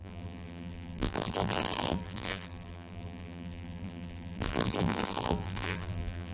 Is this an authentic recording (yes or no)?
no